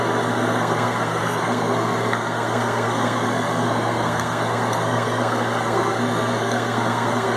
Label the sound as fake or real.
fake